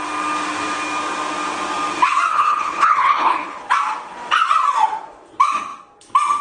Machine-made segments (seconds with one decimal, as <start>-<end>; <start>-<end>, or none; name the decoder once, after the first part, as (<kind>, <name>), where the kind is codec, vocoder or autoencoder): 2.3-3.6 (codec, HILCodec)